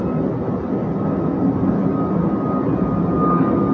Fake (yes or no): no